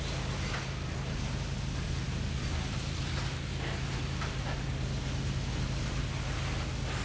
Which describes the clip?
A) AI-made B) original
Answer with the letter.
B